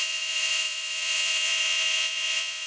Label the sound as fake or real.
fake